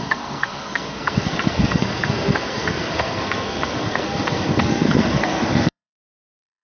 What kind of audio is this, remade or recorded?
remade